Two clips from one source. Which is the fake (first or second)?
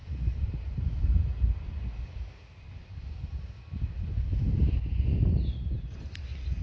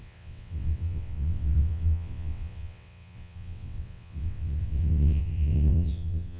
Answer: second